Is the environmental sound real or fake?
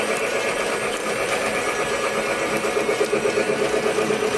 real